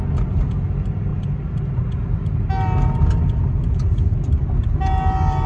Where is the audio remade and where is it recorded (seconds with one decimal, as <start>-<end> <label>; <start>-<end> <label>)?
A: 0.0-5.5 recorded